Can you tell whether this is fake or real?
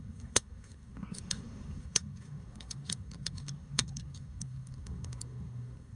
fake